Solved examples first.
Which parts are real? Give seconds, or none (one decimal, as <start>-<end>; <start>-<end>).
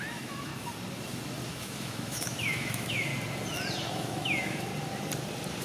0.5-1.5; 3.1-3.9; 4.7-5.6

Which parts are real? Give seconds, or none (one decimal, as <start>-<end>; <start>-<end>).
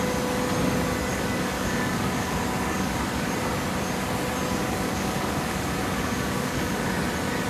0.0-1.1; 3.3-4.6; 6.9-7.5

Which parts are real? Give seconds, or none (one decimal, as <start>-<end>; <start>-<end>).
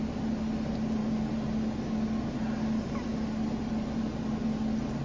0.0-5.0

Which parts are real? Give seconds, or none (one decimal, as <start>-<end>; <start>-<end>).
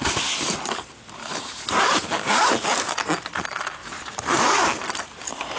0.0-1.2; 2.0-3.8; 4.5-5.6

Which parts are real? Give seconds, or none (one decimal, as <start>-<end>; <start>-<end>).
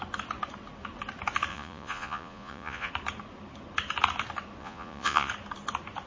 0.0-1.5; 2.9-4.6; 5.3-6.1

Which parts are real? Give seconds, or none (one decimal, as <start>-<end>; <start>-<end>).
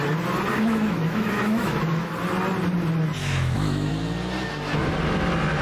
0.0-0.5; 2.1-3.2; 3.9-5.6